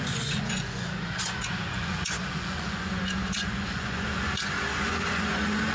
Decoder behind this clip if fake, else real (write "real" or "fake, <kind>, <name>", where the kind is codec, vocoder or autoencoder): fake, vocoder, Vocos